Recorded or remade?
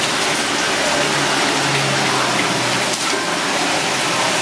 recorded